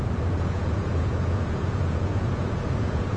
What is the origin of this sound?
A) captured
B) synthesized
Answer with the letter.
B